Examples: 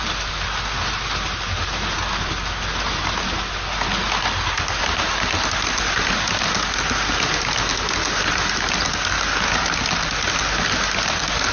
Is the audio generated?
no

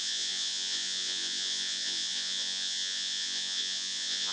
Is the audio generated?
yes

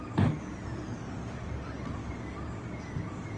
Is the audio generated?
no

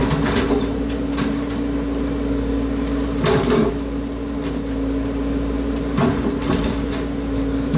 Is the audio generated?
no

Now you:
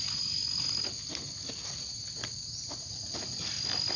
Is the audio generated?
no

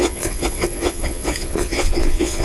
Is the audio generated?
yes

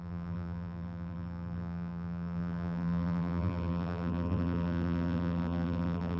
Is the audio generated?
yes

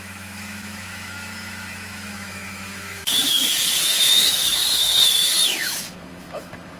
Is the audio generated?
yes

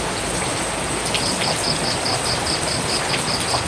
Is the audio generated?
no